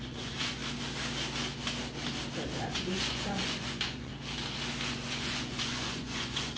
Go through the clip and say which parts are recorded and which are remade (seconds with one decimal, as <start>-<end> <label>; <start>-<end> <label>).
0.0-0.6 remade; 0.6-2.7 recorded; 2.7-4.1 remade; 4.1-4.9 recorded; 4.9-6.6 remade